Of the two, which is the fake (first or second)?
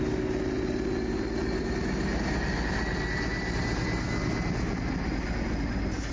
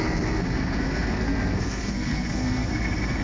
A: second